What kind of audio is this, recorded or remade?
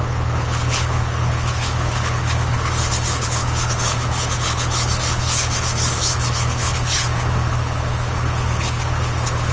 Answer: remade